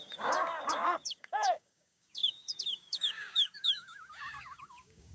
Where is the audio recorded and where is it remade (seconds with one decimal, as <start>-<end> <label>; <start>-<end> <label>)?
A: 0.0-5.1 remade